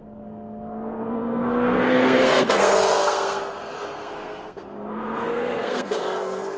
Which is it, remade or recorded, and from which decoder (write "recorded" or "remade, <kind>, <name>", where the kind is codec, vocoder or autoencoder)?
remade, codec, SNAC